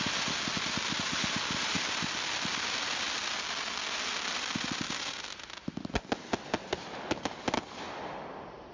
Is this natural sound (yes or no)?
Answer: yes